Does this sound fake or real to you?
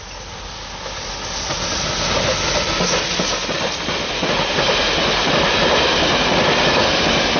real